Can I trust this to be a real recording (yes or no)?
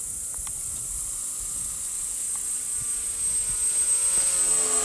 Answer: yes